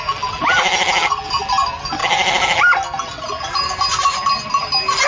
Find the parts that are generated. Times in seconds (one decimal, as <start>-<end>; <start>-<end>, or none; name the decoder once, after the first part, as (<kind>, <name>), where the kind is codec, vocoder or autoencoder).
none